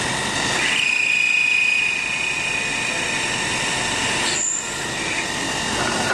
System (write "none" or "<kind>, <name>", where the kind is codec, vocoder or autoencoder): none